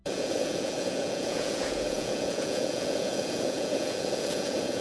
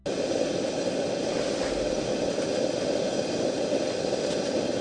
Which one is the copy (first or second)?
first